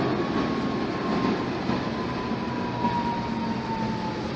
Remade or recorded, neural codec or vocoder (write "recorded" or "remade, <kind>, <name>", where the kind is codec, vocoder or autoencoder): recorded